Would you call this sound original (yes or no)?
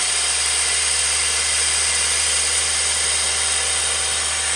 yes